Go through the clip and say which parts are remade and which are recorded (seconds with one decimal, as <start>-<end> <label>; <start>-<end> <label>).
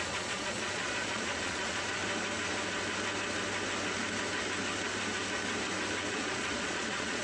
0.0-2.0 remade; 2.0-6.1 recorded; 6.1-7.2 remade